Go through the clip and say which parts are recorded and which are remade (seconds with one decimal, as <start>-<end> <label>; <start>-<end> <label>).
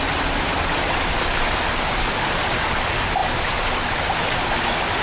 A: 0.0-5.0 recorded